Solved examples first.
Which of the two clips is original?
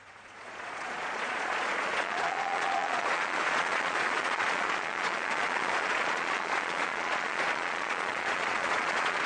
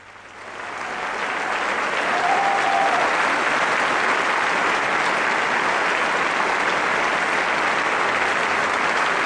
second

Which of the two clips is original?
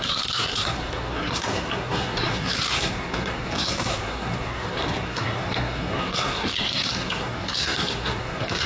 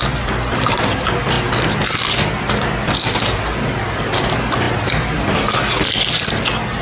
second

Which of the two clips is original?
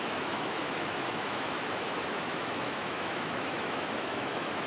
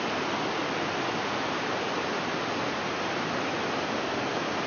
second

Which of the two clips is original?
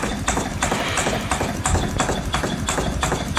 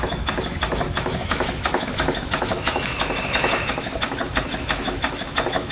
first